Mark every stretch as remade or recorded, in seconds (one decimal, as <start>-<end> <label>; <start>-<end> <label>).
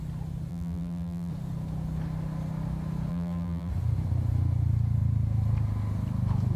0.0-0.5 recorded; 0.5-1.3 remade; 1.3-3.1 recorded; 3.1-3.7 remade; 3.7-6.6 recorded